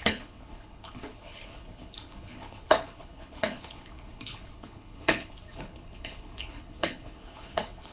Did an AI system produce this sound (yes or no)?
yes